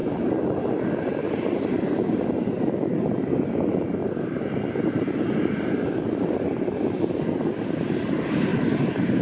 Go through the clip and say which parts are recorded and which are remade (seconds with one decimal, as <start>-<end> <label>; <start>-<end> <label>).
0.0-9.2 recorded